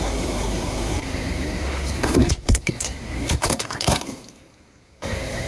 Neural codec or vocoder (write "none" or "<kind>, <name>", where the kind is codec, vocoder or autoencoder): codec, SNAC